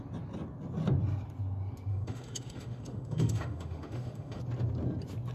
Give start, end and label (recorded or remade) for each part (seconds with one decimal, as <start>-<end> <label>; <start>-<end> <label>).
0.0-1.9 recorded; 1.9-4.4 remade; 4.4-5.3 recorded